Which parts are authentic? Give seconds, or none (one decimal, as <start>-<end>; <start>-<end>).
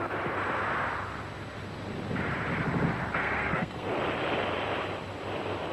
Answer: 0.0-3.2; 3.9-5.7